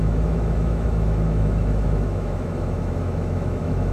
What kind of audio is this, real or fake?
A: fake